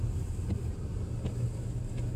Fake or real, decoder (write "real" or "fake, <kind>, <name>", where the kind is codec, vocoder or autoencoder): real